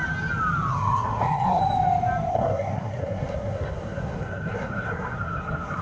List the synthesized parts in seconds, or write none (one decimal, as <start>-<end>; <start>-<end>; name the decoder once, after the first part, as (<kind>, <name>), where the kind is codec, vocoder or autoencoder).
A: 0.7-1.6 (codec, SNAC); 2.3-5.8